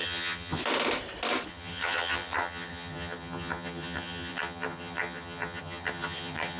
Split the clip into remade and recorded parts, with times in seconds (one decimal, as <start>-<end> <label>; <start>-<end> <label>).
0.0-0.6 remade; 0.6-1.5 recorded; 1.5-6.6 remade